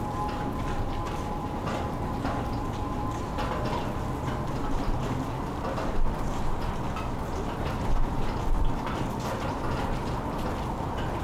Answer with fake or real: real